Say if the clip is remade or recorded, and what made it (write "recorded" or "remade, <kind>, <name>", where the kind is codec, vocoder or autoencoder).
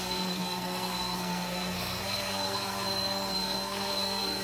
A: remade, codec, SNAC